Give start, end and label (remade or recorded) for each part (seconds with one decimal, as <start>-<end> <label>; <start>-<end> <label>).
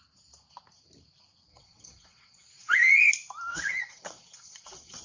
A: 0.0-1.5 recorded; 1.5-3.1 remade; 3.1-3.5 recorded; 3.5-5.0 remade